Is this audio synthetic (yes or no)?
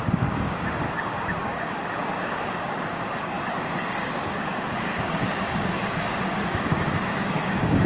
yes